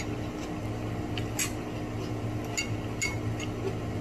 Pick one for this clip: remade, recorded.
recorded